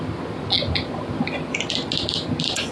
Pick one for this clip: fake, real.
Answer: real